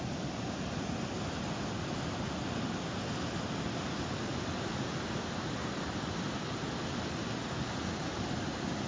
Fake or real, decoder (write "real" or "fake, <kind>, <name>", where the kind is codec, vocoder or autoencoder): real